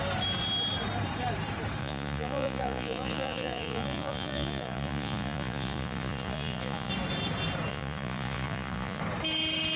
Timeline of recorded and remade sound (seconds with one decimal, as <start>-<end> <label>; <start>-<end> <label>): 0.0-1.8 recorded; 1.8-6.9 remade; 6.9-7.7 recorded; 7.7-9.0 remade; 9.0-9.8 recorded